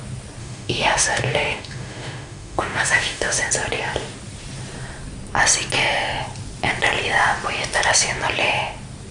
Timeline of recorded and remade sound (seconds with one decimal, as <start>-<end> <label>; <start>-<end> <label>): 0.0-0.4 recorded; 0.4-3.5 remade; 3.5-9.1 recorded